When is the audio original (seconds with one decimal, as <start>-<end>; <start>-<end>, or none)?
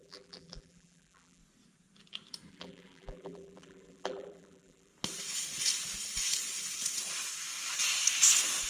1.4-2.5; 4.9-8.7